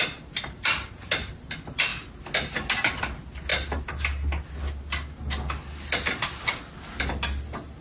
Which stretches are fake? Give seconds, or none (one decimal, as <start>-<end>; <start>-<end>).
none